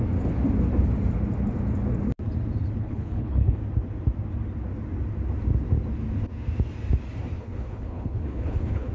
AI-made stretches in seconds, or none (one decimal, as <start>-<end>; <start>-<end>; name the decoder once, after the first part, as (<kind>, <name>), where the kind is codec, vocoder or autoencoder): 2.8-3.6 (codec, HILCodec); 7.4-8.9